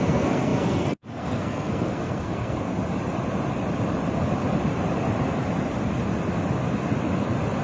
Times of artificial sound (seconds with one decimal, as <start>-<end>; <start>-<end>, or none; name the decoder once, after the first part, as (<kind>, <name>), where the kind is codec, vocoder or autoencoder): 0.0-2.7 (codec, SNAC)